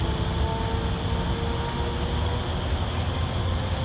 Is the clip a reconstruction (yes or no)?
no